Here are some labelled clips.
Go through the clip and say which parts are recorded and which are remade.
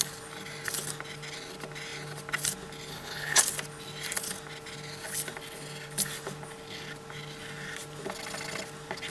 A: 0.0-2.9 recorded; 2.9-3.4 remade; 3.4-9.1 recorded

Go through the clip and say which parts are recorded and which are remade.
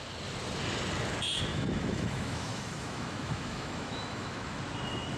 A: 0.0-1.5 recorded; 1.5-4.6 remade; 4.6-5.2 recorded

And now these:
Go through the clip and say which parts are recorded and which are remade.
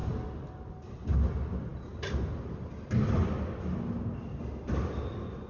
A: 0.0-5.5 recorded